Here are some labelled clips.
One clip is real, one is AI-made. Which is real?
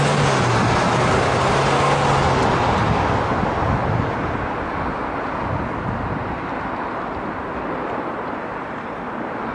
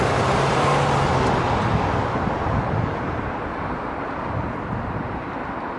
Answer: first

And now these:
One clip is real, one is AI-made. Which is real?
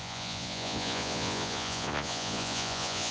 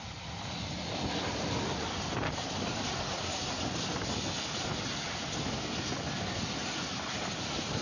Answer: second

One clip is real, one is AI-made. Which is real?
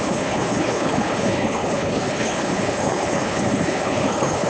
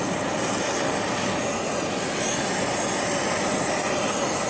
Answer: second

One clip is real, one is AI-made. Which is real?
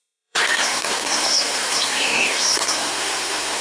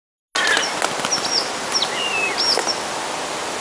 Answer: second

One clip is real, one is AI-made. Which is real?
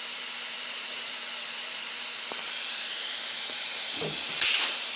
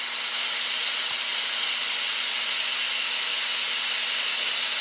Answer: second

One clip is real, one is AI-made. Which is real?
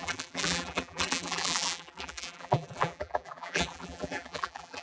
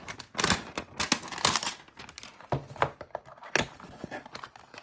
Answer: second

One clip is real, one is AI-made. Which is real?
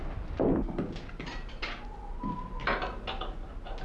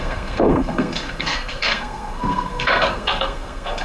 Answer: first